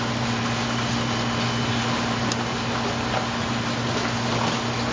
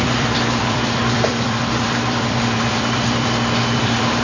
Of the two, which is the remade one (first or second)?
second